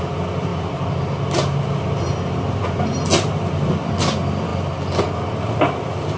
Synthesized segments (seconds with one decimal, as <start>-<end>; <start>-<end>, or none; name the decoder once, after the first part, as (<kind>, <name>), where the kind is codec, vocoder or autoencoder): none